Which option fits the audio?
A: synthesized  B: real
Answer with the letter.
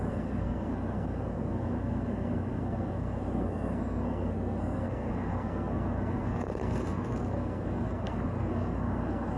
A